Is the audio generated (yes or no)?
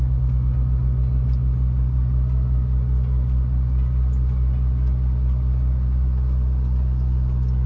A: no